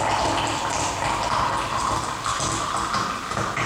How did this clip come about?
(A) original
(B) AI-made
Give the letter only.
A